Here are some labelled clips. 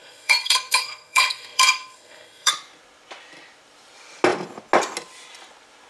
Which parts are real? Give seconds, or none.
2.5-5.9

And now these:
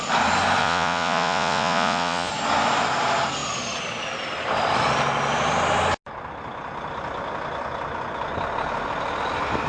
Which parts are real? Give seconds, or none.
0.0-0.6; 2.3-9.7

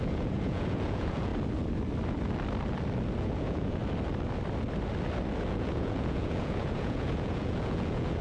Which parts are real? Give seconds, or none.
1.3-3.2; 3.8-5.4

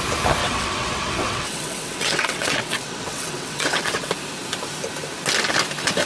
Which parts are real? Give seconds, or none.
0.0-0.4; 4.1-6.1

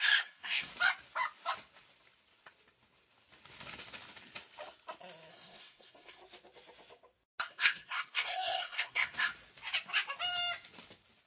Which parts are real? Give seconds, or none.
0.7-5.3; 6.2-7.5; 9.3-11.3

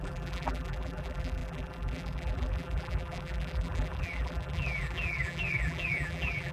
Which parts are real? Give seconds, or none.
none

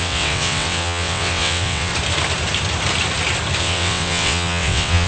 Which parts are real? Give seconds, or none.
1.9-3.6